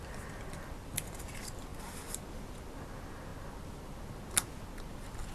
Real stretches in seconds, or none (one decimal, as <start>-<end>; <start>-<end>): 0.0-5.3